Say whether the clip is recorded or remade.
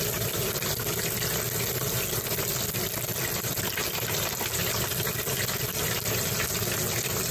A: recorded